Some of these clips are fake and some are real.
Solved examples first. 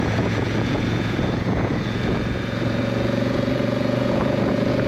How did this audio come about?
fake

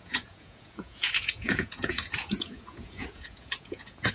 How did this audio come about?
fake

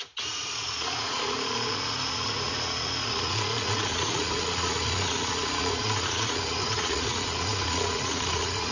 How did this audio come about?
fake